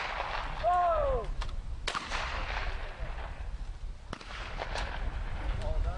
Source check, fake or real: real